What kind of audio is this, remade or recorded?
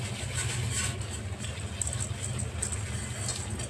recorded